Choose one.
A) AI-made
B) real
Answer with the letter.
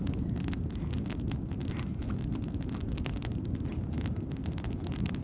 B